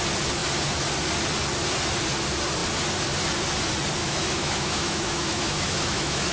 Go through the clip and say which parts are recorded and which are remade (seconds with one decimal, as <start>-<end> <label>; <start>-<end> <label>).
0.0-4.0 recorded; 4.0-6.3 remade